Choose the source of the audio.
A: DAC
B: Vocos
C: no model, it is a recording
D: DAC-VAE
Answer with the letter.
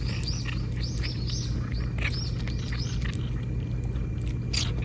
C